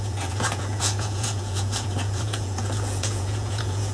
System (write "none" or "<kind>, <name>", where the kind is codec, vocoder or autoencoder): vocoder, Vocos